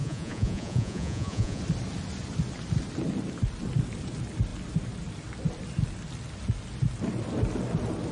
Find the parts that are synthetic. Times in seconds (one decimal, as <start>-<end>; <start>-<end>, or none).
0.0-1.6